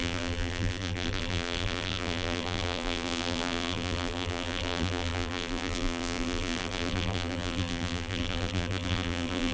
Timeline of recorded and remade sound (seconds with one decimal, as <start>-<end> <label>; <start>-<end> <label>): 0.0-9.5 remade